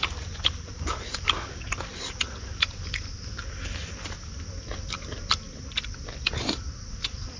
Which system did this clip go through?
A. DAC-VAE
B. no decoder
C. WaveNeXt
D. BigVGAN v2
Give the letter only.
B